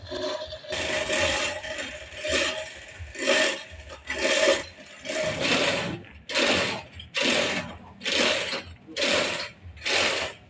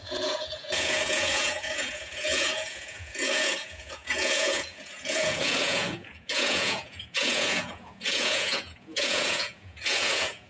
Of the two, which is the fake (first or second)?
second